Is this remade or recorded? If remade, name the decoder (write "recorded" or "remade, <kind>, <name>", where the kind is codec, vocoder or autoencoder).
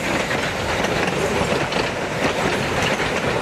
recorded